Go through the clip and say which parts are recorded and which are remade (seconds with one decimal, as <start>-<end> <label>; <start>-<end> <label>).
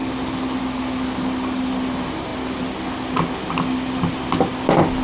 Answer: 0.0-5.0 recorded